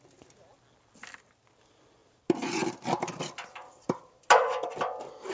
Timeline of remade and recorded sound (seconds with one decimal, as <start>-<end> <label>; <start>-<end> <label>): 0.0-5.3 recorded